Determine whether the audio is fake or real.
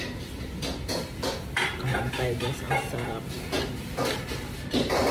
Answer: fake